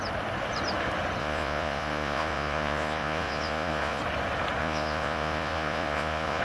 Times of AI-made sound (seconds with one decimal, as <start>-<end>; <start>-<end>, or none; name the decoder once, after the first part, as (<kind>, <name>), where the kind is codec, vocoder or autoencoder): 1.2-4.0 (vocoder, Vocos); 4.6-6.4